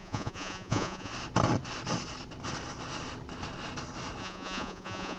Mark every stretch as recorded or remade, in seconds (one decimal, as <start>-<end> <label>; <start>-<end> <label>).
0.0-1.1 remade; 1.1-4.2 recorded; 4.2-5.2 remade